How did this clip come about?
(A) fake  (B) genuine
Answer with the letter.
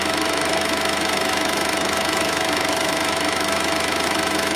A